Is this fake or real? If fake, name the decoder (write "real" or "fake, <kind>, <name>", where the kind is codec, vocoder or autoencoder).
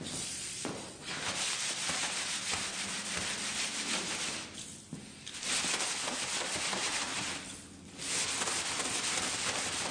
fake, vocoder, BigVGAN v2